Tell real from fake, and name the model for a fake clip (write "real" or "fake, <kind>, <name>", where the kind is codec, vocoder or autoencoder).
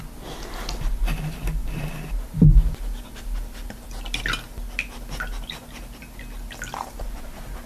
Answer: real